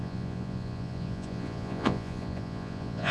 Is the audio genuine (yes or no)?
no